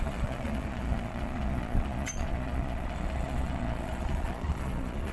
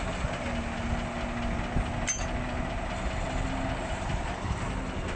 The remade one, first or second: first